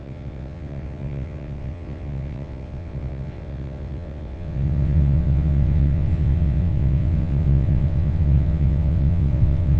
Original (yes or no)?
no